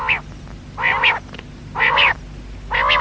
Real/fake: real